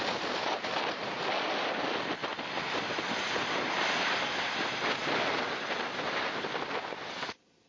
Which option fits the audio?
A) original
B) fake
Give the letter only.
A